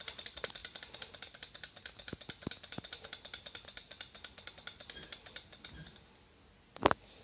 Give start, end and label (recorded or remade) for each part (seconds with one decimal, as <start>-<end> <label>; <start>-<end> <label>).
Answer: 0.0-7.2 recorded